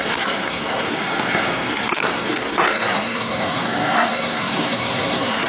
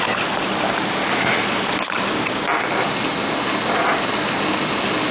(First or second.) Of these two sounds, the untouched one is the second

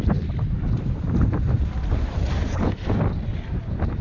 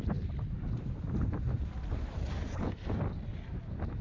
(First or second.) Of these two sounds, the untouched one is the second